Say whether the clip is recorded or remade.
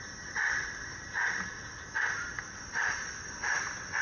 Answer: remade